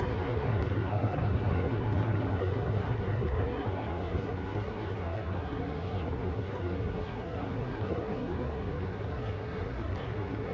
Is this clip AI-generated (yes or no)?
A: yes